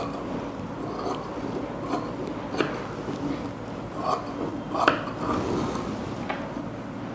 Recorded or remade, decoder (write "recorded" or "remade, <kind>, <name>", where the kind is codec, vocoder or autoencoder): recorded